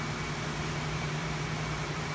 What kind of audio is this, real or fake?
fake